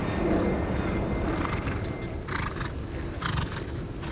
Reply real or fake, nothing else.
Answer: real